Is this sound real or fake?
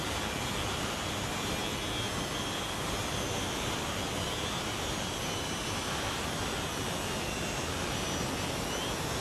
real